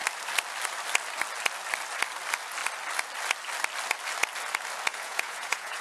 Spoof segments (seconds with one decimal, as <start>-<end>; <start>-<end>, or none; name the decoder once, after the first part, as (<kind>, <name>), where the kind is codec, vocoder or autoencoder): 4.9-5.8 (vocoder, Vocos)